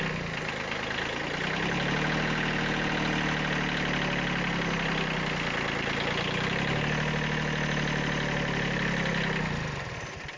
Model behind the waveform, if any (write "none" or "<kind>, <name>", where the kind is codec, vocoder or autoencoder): none